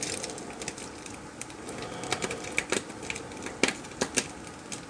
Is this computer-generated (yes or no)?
no